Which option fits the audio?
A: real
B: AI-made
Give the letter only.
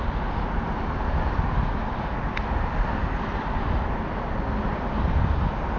A